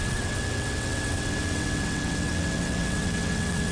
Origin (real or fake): fake